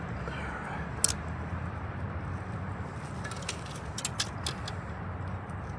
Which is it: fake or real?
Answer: real